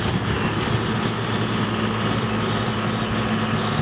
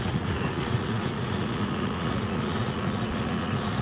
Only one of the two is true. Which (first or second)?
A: first